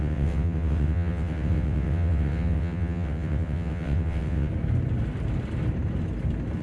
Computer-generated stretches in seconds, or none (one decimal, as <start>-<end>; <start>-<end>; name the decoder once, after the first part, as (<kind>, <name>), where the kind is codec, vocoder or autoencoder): 0.0-4.5 (vocoder, WaveNeXt)